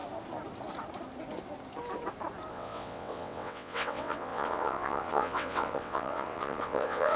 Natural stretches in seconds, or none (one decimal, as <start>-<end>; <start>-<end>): 0.0-2.5